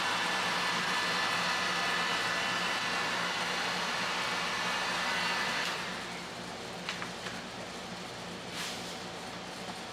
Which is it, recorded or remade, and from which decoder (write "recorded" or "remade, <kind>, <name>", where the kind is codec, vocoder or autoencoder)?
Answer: recorded